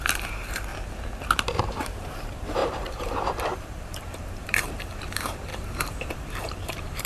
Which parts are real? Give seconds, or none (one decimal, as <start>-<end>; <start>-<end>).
0.7-1.6

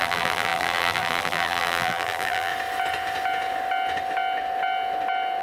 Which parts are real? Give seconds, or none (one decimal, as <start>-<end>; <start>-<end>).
2.5-5.4

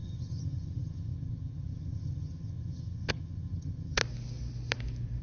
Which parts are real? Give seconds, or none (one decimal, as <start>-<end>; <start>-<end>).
4.0-5.2

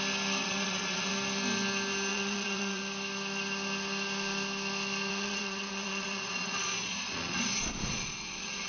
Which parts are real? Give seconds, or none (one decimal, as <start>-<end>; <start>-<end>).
0.0-0.4; 1.1-2.1; 2.8-5.1